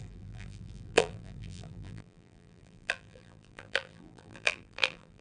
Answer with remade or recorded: remade